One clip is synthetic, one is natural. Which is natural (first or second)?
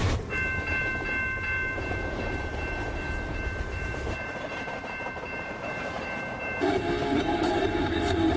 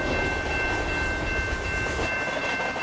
second